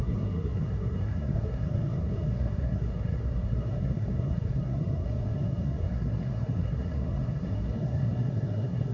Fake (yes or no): yes